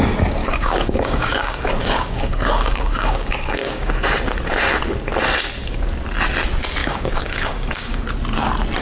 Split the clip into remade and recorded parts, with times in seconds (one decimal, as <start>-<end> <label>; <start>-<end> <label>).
0.0-0.4 recorded; 0.4-3.9 remade; 3.9-6.8 recorded; 6.8-8.0 remade; 8.0-8.8 recorded